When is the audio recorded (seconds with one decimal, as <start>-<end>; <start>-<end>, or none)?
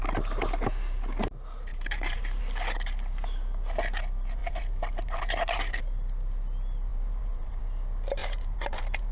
0.0-1.7; 2.4-4.4; 5.8-6.9; 7.6-8.2